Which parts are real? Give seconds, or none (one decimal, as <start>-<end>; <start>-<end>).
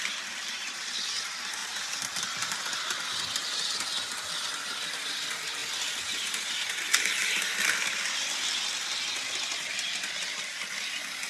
5.6-6.5